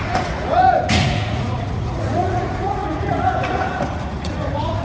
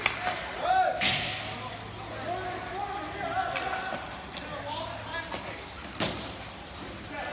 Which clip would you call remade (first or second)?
first